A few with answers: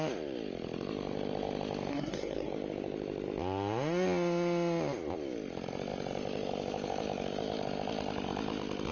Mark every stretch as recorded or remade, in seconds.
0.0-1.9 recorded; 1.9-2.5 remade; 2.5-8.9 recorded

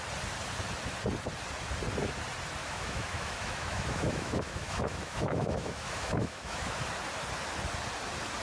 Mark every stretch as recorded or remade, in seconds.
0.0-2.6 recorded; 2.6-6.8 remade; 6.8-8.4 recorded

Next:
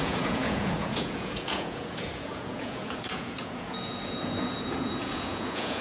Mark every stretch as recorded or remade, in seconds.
0.0-5.8 remade

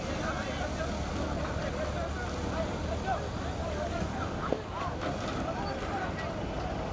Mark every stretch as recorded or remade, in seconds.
0.0-3.6 recorded; 3.6-5.0 remade; 5.0-6.9 recorded